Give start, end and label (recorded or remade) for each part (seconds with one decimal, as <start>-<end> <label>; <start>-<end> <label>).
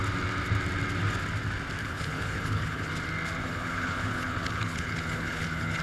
0.0-1.8 recorded; 1.8-2.9 remade; 2.9-3.4 recorded; 3.4-5.8 remade